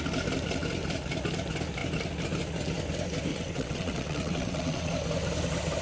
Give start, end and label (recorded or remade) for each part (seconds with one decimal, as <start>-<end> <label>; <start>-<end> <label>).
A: 0.0-3.3 recorded; 3.3-4.9 remade; 4.9-5.8 recorded